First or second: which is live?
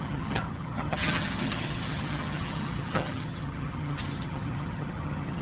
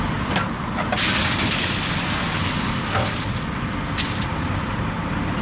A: second